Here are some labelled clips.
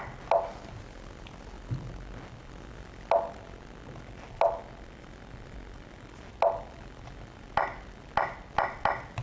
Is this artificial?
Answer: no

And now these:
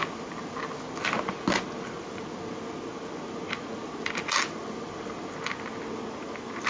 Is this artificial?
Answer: no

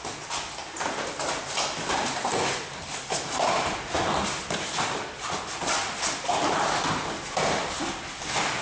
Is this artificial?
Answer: no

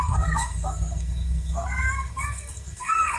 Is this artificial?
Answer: yes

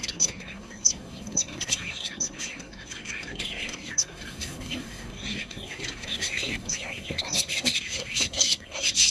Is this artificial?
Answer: yes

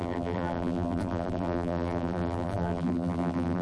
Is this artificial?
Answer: yes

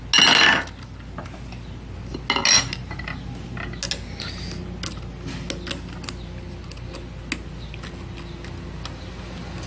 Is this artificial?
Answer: no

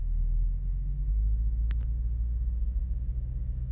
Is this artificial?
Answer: no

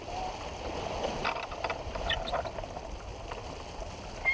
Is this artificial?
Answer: no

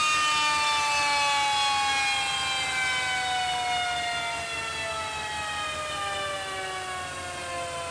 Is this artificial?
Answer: no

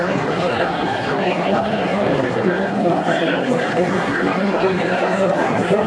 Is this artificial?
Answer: yes